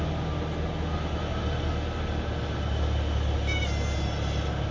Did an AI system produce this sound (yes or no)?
no